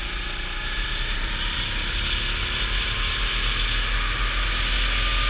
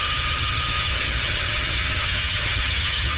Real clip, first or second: first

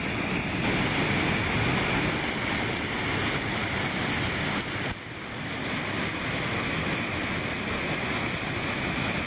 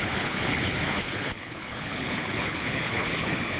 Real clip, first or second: first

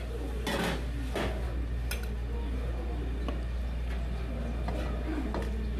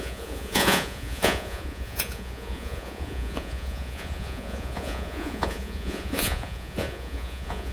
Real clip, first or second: first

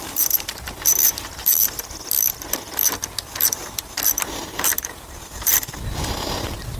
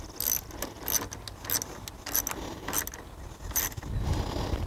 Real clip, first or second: second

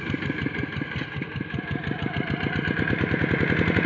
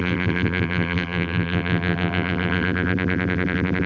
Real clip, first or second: first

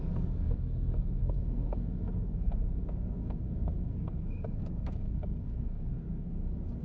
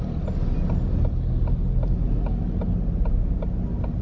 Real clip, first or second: second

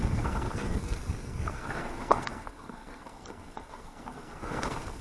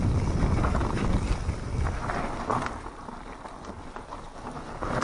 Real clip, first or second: second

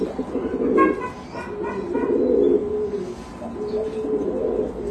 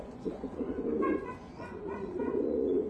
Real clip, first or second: first